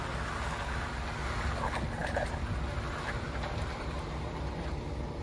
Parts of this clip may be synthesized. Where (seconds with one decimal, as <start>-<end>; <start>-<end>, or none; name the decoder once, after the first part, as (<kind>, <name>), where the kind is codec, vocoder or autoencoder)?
2.0-5.2 (vocoder, BigVGAN v2)